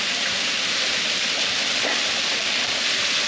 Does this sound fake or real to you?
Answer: real